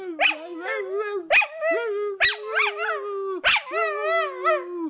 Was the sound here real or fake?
real